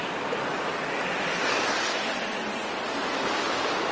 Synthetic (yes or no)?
no